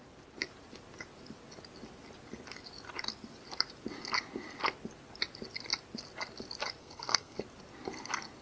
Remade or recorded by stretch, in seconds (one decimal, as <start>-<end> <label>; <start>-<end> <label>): 0.0-6.8 recorded; 6.8-7.4 remade; 7.4-8.4 recorded